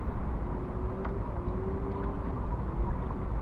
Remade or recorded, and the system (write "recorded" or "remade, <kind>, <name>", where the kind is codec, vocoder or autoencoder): recorded